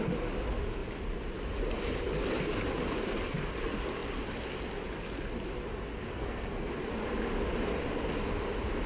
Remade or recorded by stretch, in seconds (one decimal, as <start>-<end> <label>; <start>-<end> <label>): 0.0-6.1 recorded; 6.1-6.7 remade; 6.7-8.9 recorded

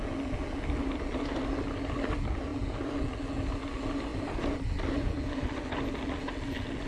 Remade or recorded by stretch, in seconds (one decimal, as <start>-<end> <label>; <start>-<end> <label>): 0.0-6.9 recorded

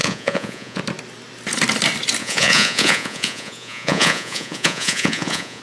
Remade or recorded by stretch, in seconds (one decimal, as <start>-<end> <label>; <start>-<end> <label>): 0.0-0.8 remade; 0.8-2.2 recorded; 2.2-5.6 remade